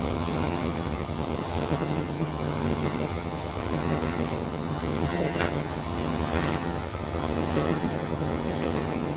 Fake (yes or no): yes